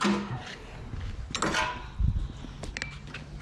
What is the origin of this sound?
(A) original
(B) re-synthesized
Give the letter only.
A